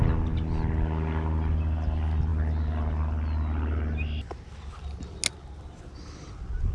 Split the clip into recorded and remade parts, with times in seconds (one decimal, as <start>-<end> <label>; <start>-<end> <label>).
0.0-6.7 recorded